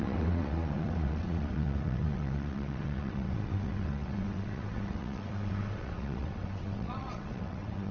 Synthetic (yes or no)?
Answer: yes